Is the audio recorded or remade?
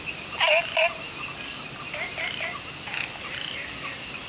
recorded